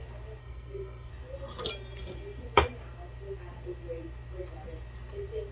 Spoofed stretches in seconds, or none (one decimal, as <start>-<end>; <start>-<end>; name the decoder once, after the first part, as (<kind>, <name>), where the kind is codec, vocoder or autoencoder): 0.4-1.1 (codec, SNAC)